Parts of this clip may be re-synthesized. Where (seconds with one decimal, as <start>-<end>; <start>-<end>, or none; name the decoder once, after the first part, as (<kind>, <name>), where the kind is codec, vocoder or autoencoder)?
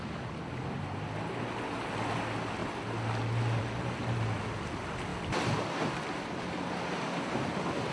none